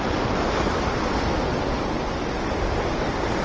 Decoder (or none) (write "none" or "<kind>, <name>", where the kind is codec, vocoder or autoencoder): none